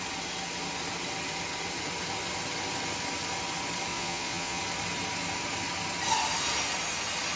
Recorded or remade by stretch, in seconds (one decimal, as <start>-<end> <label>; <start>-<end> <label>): 0.0-3.9 recorded; 3.9-4.6 remade; 4.6-7.4 recorded